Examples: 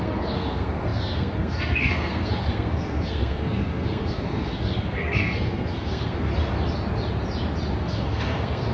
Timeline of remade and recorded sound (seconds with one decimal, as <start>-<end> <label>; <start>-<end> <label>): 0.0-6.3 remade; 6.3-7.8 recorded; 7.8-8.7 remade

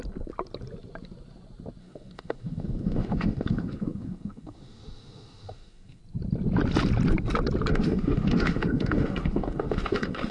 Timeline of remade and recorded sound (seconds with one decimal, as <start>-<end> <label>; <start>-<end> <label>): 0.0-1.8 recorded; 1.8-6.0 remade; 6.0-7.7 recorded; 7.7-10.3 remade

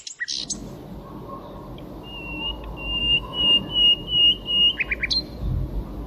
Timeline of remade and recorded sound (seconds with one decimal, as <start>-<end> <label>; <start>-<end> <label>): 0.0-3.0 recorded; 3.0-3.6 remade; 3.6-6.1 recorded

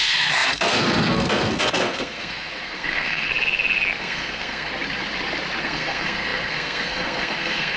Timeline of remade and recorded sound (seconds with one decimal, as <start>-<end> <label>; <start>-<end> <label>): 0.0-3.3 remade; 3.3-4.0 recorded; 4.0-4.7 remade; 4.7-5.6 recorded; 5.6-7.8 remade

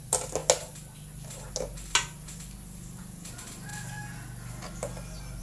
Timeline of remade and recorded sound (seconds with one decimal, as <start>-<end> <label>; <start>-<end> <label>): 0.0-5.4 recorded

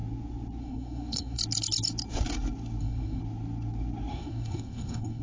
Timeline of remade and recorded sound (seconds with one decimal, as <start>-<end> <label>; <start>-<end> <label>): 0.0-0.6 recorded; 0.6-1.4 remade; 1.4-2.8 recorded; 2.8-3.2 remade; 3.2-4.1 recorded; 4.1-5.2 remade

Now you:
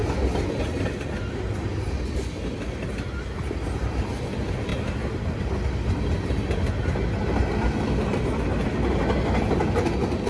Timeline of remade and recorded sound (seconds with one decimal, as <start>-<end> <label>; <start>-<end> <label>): 0.0-10.3 recorded